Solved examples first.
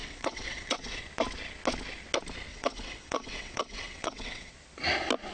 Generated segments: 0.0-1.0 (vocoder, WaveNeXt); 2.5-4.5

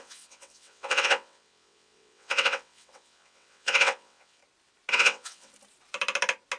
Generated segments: 0.0-4.4 (vocoder, WaveNeXt); 4.9-5.5

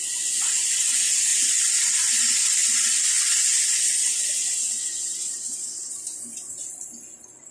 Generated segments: 4.4-5.9 (vocoder, WaveNeXt)

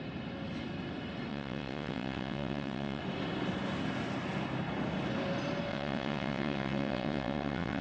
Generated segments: 1.3-3.0 (vocoder, WaveNeXt); 5.7-7.8

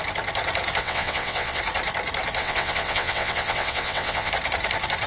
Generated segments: 0.8-1.6 (vocoder, WaveNeXt); 2.4-4.3

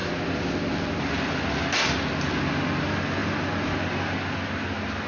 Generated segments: none

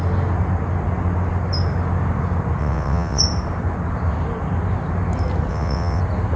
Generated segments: 2.6-3.2 (vocoder, WaveNeXt); 5.5-6.0